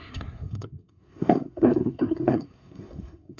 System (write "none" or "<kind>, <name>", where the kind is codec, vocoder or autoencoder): codec, SNAC